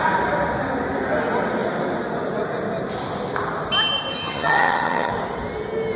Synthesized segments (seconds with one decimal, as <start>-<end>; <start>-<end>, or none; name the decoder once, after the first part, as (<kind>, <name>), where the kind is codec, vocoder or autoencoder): 4.2-5.1 (vocoder, HiFi-GAN)